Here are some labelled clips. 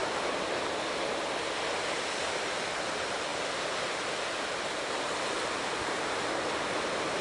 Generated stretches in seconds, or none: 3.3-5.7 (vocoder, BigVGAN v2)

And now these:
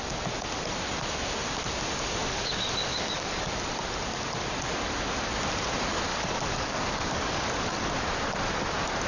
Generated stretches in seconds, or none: 2.2-3.5 (codec, DAC); 6.1-7.9

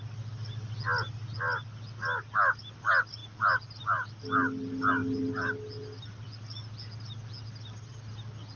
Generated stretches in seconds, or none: none